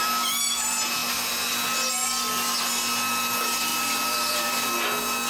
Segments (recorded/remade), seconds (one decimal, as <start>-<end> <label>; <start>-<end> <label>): 0.0-3.7 recorded; 3.7-4.5 remade; 4.5-5.3 recorded

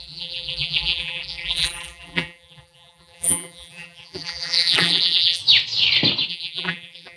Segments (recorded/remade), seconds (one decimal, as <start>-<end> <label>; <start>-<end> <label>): 0.0-5.4 remade; 5.4-6.3 recorded; 6.3-7.2 remade

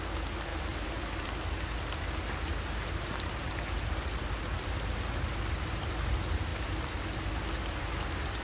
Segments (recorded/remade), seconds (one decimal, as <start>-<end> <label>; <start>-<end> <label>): 0.0-0.5 recorded; 0.5-1.3 remade; 1.3-8.4 recorded

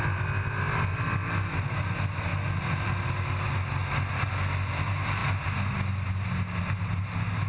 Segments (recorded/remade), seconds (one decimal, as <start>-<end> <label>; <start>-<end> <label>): 0.0-7.5 recorded